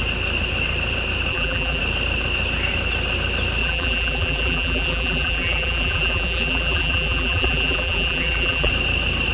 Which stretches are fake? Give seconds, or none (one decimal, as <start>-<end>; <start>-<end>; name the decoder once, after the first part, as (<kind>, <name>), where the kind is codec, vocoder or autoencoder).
1.3-1.8 (vocoder, BigVGAN v2); 3.6-8.7

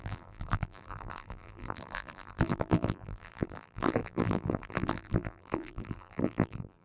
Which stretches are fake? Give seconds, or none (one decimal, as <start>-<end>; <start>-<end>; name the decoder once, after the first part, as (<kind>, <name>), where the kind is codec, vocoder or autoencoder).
0.0-6.8 (vocoder, BigVGAN v2)

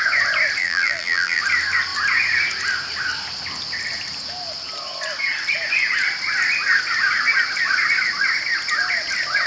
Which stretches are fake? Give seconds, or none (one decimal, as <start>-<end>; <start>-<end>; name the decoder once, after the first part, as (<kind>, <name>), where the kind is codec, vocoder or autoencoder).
0.6-1.4 (vocoder, BigVGAN v2)

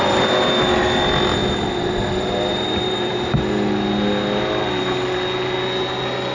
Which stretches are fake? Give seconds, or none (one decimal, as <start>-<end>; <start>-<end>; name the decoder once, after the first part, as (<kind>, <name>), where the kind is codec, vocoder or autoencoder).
1.4-3.3 (vocoder, BigVGAN v2)

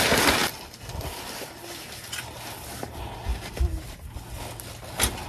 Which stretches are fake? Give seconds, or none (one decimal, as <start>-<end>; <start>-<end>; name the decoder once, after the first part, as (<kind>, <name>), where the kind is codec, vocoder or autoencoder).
none

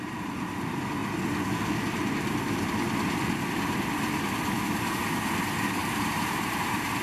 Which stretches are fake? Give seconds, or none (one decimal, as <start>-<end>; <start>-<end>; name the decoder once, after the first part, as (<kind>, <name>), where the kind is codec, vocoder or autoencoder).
5.8-7.0 (vocoder, BigVGAN v2)